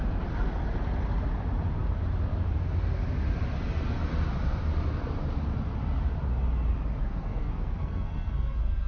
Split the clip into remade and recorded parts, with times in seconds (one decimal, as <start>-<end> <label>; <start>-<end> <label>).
0.0-7.0 recorded; 7.0-8.9 remade